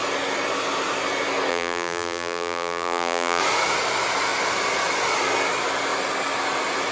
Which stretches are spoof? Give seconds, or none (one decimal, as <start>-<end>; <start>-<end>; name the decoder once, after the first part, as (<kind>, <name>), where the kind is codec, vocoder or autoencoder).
1.5-3.4 (vocoder, BigVGAN v2)